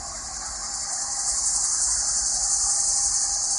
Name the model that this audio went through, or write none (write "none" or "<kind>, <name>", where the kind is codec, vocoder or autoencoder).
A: none